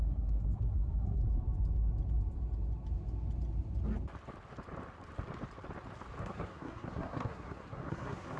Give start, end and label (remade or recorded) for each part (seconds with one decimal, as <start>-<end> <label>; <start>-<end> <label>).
0.0-1.2 remade; 1.2-6.2 recorded; 6.2-8.4 remade